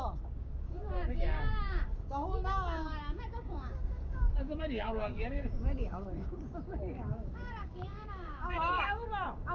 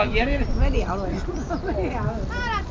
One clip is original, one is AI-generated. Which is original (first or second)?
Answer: second